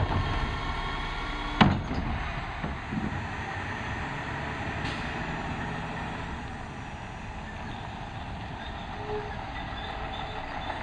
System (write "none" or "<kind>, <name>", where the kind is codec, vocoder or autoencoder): none